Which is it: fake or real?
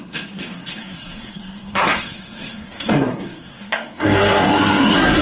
fake